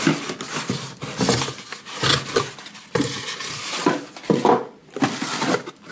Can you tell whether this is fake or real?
real